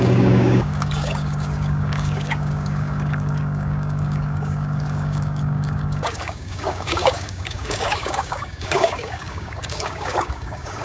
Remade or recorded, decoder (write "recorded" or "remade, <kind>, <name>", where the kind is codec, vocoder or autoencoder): remade, codec, DAC